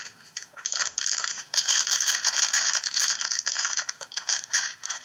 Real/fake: fake